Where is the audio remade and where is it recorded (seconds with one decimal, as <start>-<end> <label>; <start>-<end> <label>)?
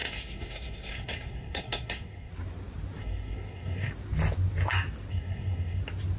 0.0-2.3 remade; 2.3-3.0 recorded; 3.0-3.9 remade; 3.9-5.1 recorded; 5.1-5.8 remade; 5.8-6.2 recorded